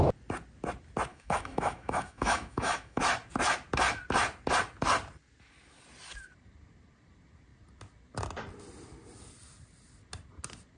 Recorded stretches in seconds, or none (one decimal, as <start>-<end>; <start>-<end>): 0.0-1.1; 3.0-10.8